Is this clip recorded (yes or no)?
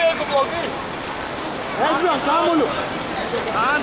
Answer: yes